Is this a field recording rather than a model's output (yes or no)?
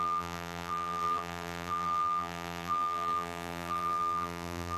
no